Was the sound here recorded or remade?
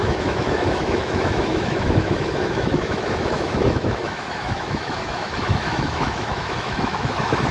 remade